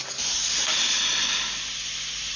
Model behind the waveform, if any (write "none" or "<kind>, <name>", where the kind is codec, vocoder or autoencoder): none